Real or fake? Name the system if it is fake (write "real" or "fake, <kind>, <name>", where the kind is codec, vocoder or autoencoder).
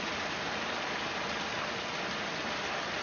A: real